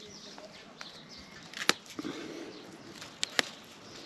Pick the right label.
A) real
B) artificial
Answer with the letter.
A